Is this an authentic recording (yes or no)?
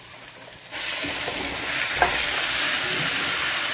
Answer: yes